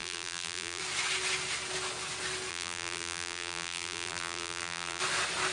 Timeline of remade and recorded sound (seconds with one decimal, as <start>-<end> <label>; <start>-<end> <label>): 0.0-0.8 remade; 0.8-2.5 recorded; 2.5-5.0 remade; 5.0-5.5 recorded